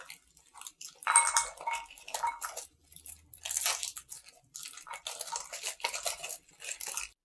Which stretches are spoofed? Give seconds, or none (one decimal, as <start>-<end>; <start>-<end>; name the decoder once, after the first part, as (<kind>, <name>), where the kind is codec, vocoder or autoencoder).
none